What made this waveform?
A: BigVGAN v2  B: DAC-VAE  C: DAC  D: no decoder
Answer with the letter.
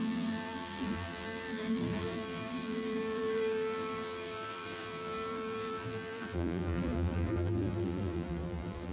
A